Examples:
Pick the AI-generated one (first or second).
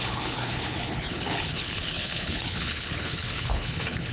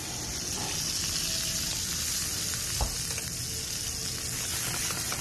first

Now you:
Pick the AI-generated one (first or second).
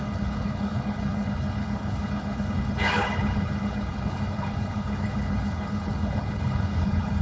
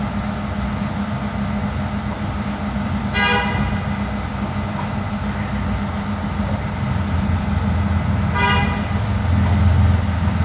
first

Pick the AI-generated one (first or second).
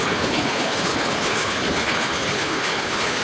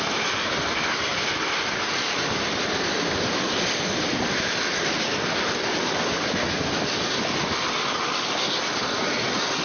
first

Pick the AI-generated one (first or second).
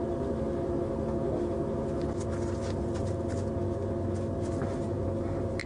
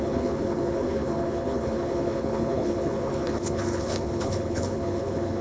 second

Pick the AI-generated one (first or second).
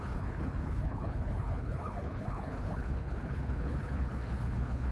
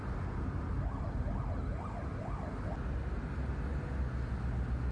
first